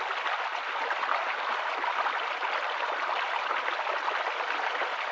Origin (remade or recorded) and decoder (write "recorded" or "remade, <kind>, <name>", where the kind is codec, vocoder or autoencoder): recorded